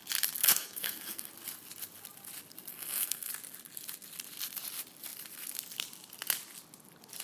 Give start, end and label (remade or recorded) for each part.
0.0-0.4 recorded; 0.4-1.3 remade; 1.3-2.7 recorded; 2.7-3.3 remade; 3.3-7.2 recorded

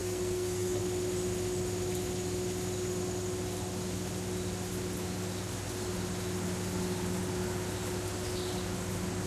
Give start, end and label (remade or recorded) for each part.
0.0-0.8 remade; 0.8-9.3 recorded

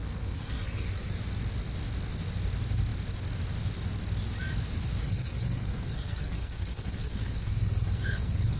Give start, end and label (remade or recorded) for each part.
0.0-1.1 remade; 1.1-5.0 recorded; 5.0-8.6 remade

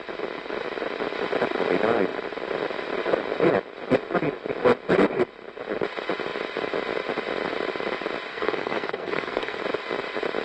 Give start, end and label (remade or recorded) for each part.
0.0-8.3 recorded; 8.3-9.6 remade; 9.6-10.4 recorded

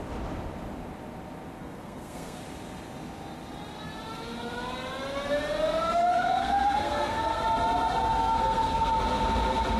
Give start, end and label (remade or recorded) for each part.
0.0-1.6 recorded; 1.6-2.4 remade; 2.4-6.1 recorded; 6.1-7.4 remade; 7.4-8.2 recorded; 8.2-8.9 remade; 8.9-9.8 recorded

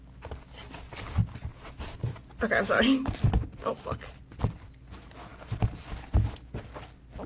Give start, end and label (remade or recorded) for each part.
0.0-7.3 recorded

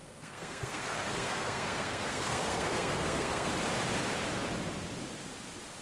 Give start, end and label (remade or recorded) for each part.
0.0-3.5 remade; 3.5-5.8 recorded